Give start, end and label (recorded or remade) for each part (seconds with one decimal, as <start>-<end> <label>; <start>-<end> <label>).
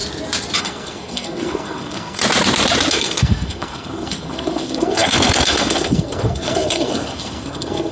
0.0-0.6 recorded; 0.6-2.2 remade; 2.2-2.9 recorded; 2.9-7.9 remade